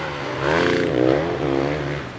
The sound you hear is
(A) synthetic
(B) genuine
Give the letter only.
B